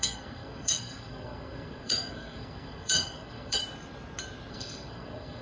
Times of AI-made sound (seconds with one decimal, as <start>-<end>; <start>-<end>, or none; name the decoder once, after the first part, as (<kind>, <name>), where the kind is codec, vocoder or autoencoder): 0.0-3.6 (codec, SNAC); 4.5-5.4